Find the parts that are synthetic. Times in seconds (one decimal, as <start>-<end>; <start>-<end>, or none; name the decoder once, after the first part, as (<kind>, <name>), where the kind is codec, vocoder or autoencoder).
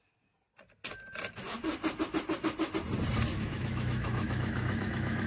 3.3-5.3 (autoencoder, DAC-VAE)